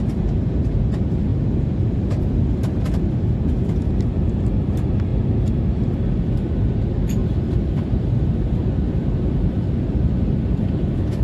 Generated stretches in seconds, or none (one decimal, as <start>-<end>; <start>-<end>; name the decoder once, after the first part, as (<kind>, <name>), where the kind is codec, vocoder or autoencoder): 1.3-3.1 (vocoder, BigVGAN v2); 7.2-10.6